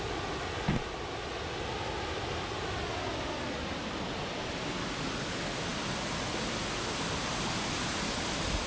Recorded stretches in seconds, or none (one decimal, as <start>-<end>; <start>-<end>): 0.0-8.7